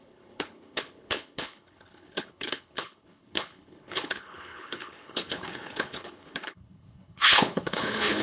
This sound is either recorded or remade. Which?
remade